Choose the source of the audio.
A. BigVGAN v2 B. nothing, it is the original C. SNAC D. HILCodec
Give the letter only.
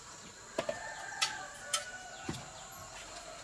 B